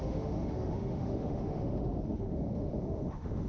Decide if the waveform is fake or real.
fake